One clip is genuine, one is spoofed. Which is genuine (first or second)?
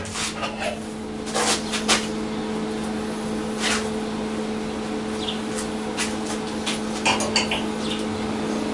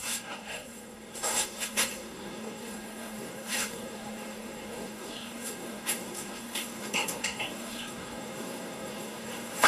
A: first